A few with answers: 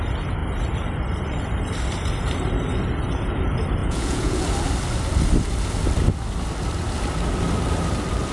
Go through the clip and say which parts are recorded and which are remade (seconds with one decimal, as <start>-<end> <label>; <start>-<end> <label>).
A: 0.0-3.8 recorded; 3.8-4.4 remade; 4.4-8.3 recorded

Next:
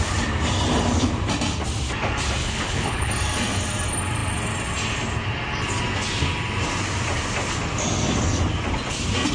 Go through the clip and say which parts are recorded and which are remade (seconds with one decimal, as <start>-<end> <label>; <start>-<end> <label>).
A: 0.0-2.4 recorded; 2.4-3.1 remade; 3.1-9.3 recorded

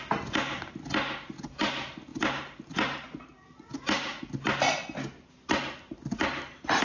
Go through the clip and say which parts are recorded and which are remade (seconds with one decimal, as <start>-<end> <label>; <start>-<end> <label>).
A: 0.0-6.8 recorded